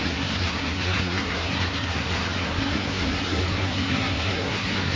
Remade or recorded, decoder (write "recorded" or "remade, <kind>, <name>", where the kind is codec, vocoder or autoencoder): remade, codec, SNAC